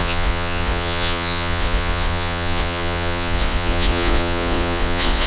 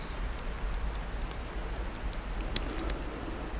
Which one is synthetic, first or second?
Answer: first